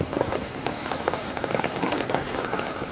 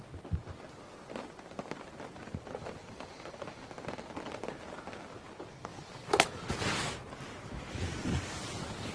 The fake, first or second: first